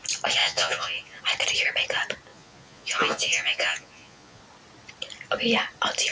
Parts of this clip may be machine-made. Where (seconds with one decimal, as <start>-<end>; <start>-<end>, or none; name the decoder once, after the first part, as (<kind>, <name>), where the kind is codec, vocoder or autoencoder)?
0.4-1.2 (vocoder, Vocos); 2.3-4.4